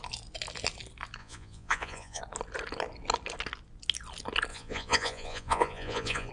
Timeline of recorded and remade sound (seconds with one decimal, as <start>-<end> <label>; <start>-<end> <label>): 0.0-1.2 recorded; 1.2-2.2 remade; 2.2-4.5 recorded; 4.5-6.3 remade